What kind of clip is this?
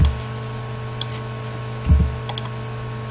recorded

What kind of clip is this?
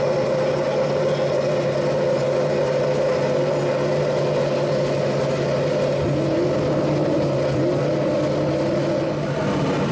recorded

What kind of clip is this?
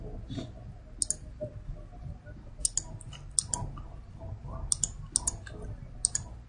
recorded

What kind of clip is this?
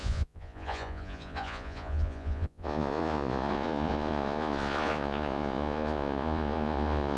remade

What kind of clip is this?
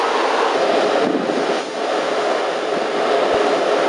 recorded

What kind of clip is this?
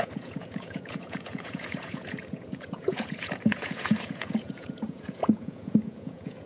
remade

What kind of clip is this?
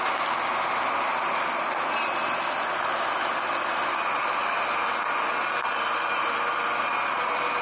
recorded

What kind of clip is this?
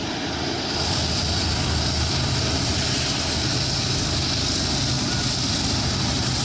recorded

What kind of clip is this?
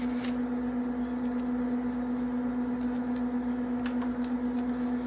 recorded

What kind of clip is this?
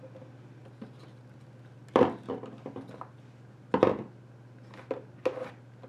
recorded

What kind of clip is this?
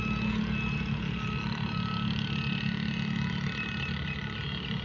recorded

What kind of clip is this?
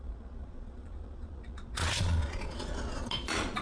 remade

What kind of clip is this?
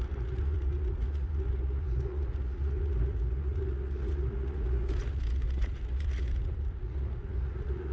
remade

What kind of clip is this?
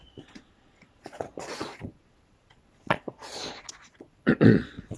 remade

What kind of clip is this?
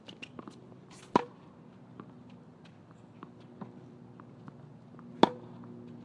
recorded